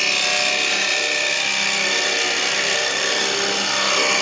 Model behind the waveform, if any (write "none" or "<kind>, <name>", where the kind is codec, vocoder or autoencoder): none